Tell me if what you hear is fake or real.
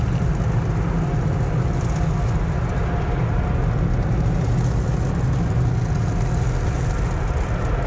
real